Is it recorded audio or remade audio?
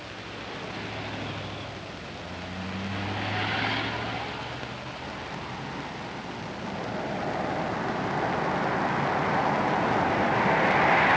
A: recorded